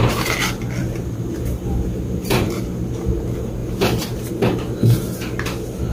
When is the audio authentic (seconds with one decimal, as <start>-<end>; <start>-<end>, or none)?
0.0-0.8; 2.6-3.6; 4.3-5.9